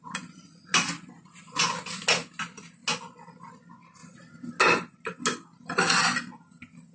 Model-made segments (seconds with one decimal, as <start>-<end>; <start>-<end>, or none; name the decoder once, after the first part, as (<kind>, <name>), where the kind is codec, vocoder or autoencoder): none